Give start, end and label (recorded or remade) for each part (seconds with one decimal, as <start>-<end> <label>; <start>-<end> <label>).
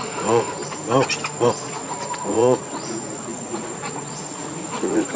0.0-0.6 remade; 0.6-1.6 recorded; 1.6-5.2 remade